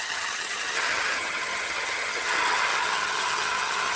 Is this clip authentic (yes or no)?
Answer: no